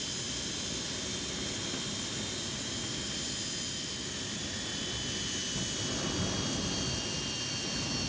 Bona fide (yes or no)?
yes